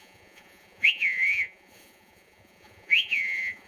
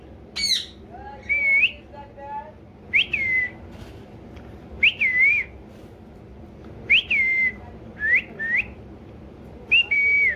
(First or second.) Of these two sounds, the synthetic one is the first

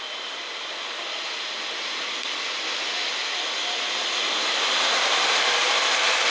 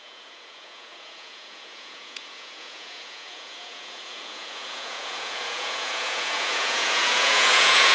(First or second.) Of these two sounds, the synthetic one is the second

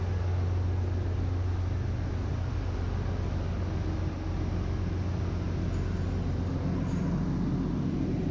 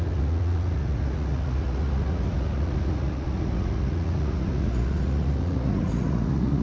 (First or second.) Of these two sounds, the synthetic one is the second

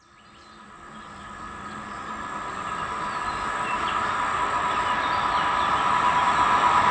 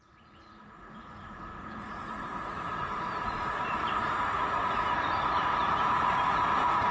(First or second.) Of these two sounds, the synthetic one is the second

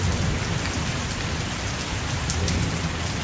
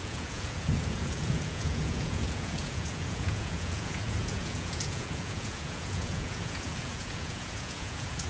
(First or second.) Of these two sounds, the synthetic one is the second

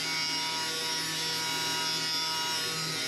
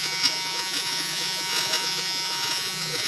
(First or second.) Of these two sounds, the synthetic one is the second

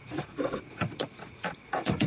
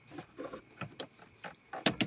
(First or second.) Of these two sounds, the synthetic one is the first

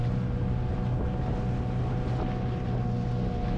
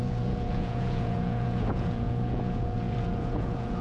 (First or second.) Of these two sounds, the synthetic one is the second